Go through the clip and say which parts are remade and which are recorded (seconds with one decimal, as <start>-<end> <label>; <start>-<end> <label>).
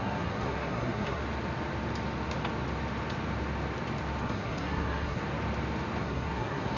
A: 0.0-1.2 remade; 1.2-4.2 recorded; 4.2-5.2 remade; 5.2-6.0 recorded; 6.0-6.8 remade